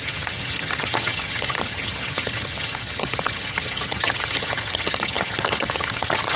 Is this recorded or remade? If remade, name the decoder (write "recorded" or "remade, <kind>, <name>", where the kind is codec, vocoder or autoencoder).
remade, vocoder, HiFi-GAN